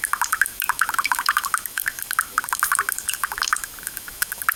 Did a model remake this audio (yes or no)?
yes